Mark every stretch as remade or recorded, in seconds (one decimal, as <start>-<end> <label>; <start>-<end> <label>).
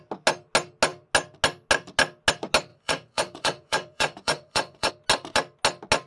0.0-2.7 recorded; 2.7-4.9 remade; 4.9-6.1 recorded